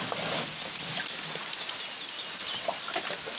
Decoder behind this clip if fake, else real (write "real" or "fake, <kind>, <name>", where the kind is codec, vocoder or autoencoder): real